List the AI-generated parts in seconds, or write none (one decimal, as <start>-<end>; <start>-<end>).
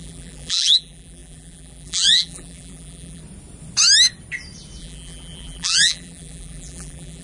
0.0-3.2; 4.8-7.2